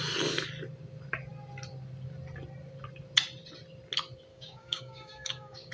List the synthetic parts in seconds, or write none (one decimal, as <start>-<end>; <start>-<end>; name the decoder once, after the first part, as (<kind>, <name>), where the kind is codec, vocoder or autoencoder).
4.3-5.7 (codec, DAC)